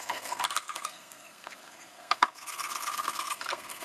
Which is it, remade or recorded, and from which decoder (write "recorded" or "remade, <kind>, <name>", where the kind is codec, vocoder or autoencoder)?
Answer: remade, codec, SNAC